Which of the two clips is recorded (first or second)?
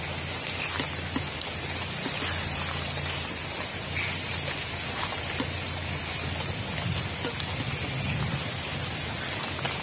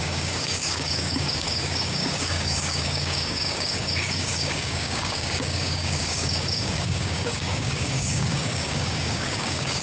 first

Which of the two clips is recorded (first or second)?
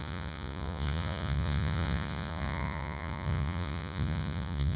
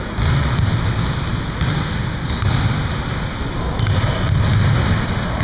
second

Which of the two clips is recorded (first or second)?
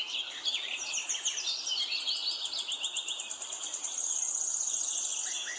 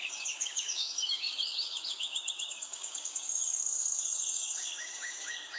first